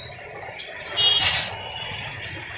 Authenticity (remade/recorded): recorded